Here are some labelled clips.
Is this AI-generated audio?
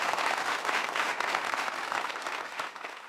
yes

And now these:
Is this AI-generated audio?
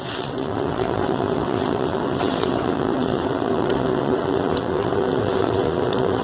yes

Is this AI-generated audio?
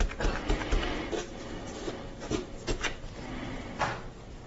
no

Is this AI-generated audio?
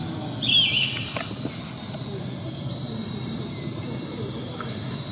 no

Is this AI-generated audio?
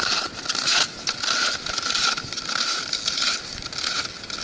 no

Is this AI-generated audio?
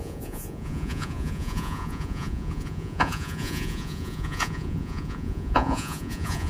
yes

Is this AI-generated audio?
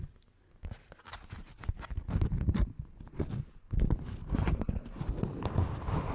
no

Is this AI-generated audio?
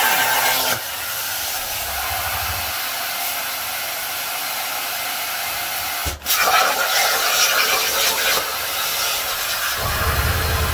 no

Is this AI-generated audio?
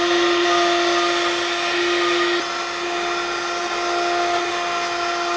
no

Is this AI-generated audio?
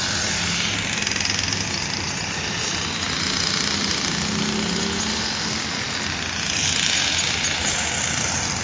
no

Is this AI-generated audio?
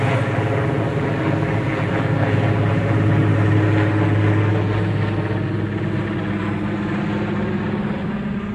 no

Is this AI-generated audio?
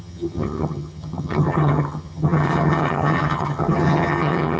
yes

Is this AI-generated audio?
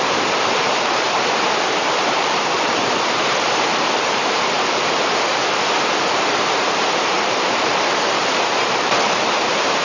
yes